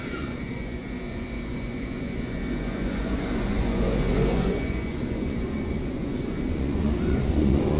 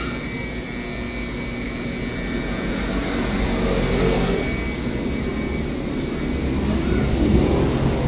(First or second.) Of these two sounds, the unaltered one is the second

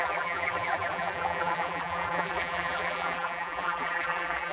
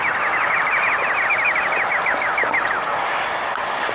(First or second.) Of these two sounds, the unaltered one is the second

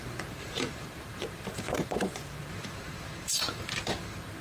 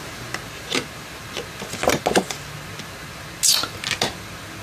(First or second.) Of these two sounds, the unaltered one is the second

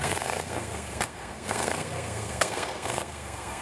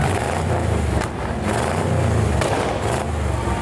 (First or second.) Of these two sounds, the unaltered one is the second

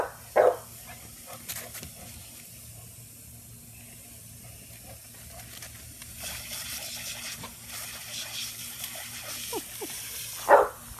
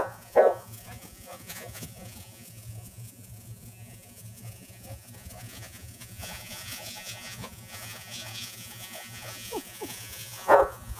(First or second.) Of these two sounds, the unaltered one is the first